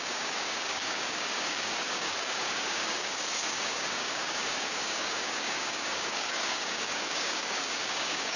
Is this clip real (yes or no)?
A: no